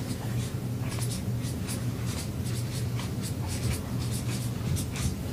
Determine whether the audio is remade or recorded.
recorded